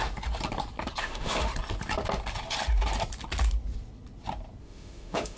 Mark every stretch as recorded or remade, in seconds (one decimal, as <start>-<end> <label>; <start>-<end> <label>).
0.0-1.0 recorded; 1.0-1.5 remade; 1.5-4.6 recorded; 4.6-5.4 remade